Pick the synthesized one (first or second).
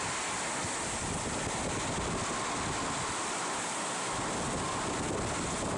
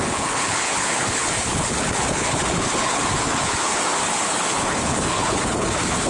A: second